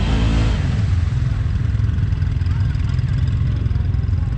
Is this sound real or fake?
real